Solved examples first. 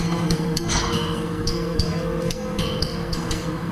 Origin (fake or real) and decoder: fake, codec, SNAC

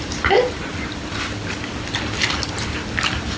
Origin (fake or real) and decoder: real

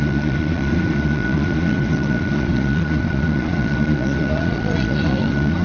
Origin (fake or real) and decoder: fake, vocoder, Vocos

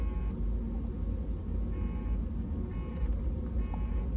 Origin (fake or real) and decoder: real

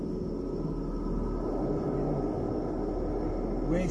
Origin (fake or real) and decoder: real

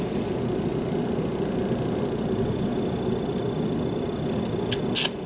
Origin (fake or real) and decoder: real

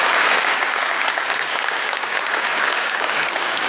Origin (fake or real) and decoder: fake, codec, DAC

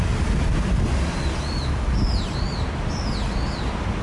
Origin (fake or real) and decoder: real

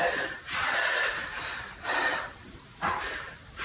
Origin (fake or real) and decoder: fake, vocoder, BigVGAN v2